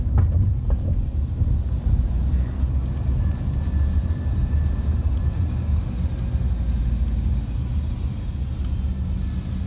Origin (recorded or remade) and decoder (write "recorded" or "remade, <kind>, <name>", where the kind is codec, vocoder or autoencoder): recorded